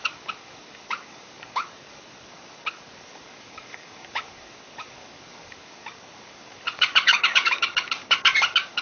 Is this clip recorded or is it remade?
remade